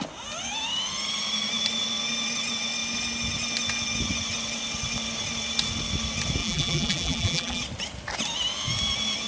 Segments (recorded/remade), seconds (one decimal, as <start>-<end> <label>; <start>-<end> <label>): 0.0-6.4 recorded; 6.4-7.6 remade; 7.6-9.3 recorded